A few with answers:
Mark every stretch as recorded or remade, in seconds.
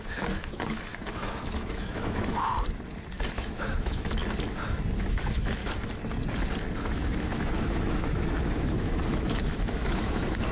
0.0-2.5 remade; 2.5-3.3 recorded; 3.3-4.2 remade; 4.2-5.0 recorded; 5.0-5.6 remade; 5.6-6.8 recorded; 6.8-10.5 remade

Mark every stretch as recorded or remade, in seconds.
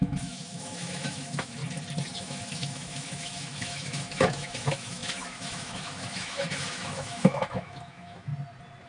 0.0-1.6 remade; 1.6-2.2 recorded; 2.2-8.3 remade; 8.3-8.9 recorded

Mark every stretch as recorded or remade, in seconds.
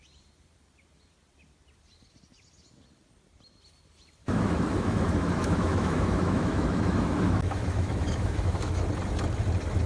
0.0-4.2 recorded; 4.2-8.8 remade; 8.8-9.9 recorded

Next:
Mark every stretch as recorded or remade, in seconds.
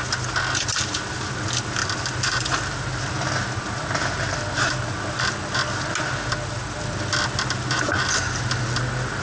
0.0-9.2 recorded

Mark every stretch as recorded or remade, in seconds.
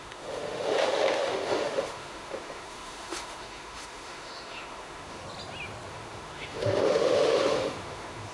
0.0-5.2 remade; 5.2-5.9 recorded; 5.9-8.3 remade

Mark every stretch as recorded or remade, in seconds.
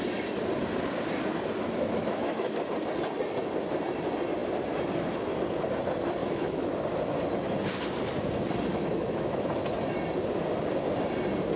0.0-1.6 recorded; 1.6-2.6 remade; 2.6-6.2 recorded; 6.2-6.8 remade; 6.8-8.7 recorded; 8.7-9.5 remade; 9.5-11.6 recorded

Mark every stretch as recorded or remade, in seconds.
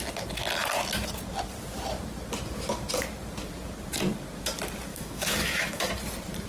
0.0-4.9 recorded; 4.9-5.9 remade; 5.9-6.5 recorded